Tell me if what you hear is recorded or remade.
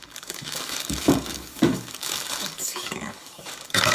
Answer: remade